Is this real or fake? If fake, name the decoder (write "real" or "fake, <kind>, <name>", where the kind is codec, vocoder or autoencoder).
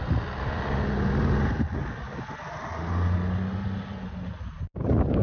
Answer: real